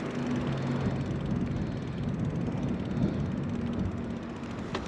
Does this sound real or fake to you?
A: real